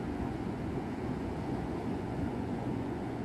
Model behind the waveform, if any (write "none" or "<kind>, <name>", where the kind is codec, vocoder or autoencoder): vocoder, Vocos